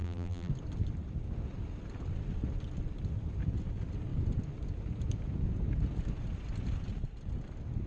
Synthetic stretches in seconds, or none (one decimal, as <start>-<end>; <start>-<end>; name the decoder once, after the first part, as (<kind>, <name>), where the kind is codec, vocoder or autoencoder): 0.0-0.5 (vocoder, BigVGAN v2)

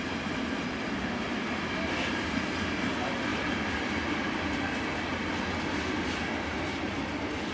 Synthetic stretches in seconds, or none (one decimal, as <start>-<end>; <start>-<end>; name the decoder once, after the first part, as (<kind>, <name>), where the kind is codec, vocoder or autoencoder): 3.3-3.8 (vocoder, BigVGAN v2)

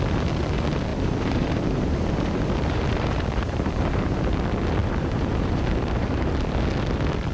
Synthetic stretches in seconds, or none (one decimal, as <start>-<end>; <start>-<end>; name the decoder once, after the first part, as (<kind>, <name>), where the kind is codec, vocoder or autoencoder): 0.9-4.2 (vocoder, BigVGAN v2); 4.8-6.3

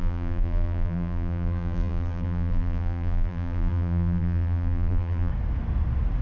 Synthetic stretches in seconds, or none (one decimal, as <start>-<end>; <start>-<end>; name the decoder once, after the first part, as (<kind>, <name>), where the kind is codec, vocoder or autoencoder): 0.0-5.3 (vocoder, BigVGAN v2)

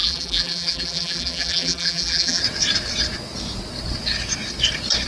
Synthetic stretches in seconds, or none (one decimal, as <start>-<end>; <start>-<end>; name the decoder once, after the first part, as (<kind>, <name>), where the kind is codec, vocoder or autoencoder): 0.0-2.4 (vocoder, BigVGAN v2)

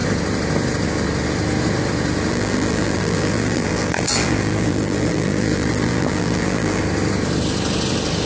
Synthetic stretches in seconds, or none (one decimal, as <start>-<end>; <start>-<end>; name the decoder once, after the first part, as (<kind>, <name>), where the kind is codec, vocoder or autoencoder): 2.3-6.8 (vocoder, BigVGAN v2)

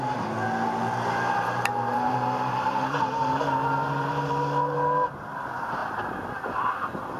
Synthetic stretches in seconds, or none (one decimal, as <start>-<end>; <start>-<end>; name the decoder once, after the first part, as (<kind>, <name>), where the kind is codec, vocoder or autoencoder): 0.8-5.1 (vocoder, BigVGAN v2)

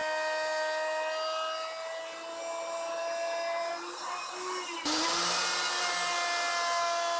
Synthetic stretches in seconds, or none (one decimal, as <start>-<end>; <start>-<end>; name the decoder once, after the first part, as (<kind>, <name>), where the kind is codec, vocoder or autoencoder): 3.6-5.1 (vocoder, BigVGAN v2)